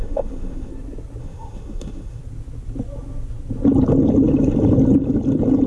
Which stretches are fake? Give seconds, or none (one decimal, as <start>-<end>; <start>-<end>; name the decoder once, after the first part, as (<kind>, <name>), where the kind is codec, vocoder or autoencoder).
0.0-0.7 (autoencoder, DAC-VAE); 1.2-2.2